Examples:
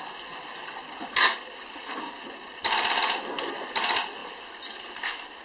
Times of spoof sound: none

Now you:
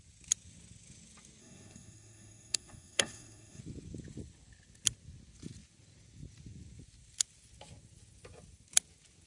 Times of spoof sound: 1.4-3.6 (codec, SNAC)

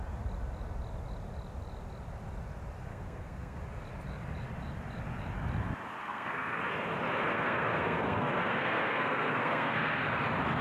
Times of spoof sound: 2.9-3.6 (codec, SNAC); 6.0-6.6; 7.3-10.0